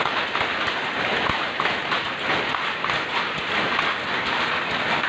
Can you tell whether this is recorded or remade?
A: recorded